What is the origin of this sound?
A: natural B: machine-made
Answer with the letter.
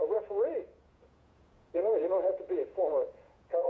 B